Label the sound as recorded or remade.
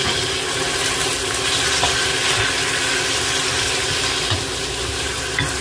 recorded